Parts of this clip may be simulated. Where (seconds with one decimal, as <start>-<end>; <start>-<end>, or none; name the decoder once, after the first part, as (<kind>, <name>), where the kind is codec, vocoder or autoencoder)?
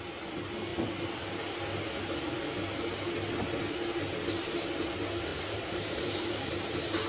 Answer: 5.3-7.1 (vocoder, BigVGAN v2)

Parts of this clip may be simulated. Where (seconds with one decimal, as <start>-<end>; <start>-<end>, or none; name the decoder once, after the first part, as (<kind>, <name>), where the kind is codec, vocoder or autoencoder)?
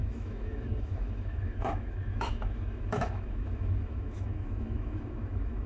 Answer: 0.0-5.7 (autoencoder, DAC-VAE)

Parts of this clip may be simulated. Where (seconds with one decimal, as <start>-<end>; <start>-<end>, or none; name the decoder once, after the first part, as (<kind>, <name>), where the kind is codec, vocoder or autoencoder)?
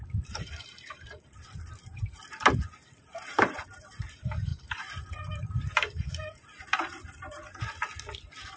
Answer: 0.0-7.4 (vocoder, BigVGAN v2)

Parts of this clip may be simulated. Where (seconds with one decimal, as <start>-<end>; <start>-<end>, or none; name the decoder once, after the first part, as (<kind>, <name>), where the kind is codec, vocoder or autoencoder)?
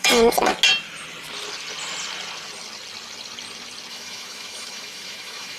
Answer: 0.0-0.5 (autoencoder, DAC-VAE); 3.9-5.6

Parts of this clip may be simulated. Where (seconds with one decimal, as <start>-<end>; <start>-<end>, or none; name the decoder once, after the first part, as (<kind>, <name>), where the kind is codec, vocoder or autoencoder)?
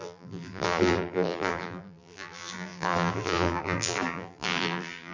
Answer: 0.0-5.1 (vocoder, BigVGAN v2)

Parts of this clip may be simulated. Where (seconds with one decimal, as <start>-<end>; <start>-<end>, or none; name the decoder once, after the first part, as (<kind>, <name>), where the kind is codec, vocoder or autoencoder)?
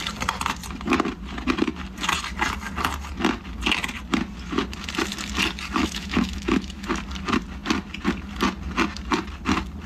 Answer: 5.8-7.0 (autoencoder, DAC-VAE)